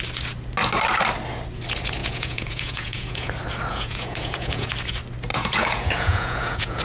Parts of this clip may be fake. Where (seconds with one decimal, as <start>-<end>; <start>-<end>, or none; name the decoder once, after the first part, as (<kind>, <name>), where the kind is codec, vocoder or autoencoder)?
2.0-3.3 (vocoder, Vocos); 3.7-4.7; 5.3-6.8